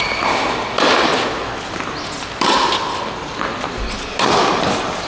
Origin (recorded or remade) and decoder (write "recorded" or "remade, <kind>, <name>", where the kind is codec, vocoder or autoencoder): recorded